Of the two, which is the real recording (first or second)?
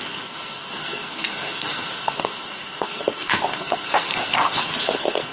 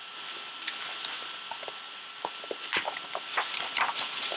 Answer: second